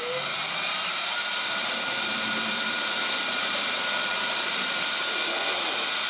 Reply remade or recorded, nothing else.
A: remade